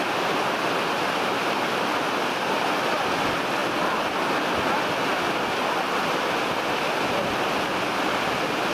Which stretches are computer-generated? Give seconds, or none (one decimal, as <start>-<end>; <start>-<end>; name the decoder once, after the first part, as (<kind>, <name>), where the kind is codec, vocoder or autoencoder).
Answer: none